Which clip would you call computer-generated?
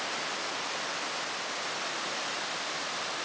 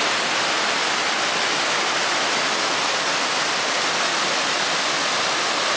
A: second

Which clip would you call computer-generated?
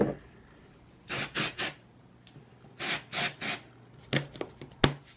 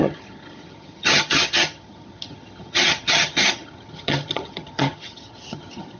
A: second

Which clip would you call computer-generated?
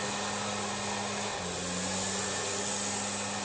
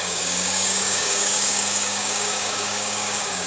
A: second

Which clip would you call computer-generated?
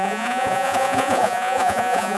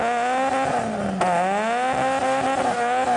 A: first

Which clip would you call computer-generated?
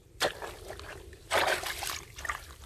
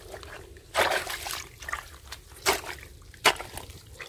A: first